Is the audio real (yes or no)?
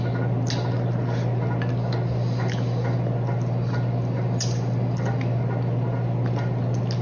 yes